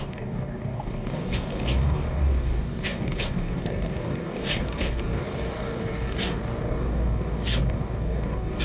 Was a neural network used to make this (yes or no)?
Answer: yes